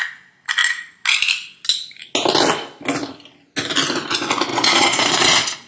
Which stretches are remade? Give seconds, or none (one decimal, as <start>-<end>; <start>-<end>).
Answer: 4.5-5.7